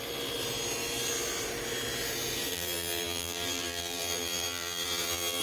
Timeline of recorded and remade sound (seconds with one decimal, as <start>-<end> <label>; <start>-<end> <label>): 0.0-2.5 recorded; 2.5-5.4 remade